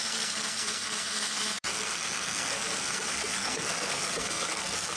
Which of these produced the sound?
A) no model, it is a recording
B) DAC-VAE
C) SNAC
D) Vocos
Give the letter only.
C